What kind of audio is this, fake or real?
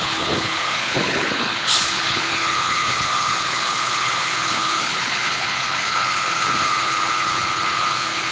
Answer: fake